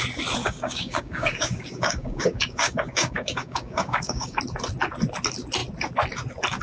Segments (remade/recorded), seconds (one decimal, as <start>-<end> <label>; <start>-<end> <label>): 0.0-0.4 recorded; 0.4-4.4 remade; 4.4-6.6 recorded